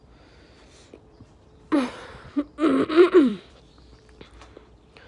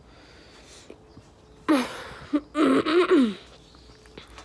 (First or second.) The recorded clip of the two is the second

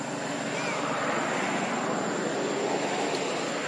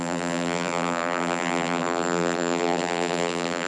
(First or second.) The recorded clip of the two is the first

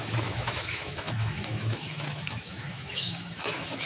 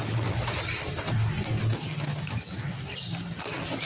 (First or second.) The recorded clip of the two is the second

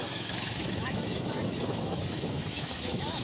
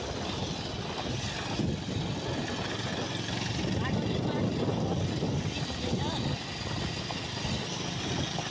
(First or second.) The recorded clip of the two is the second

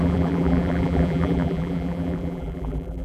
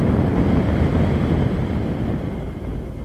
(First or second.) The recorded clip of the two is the second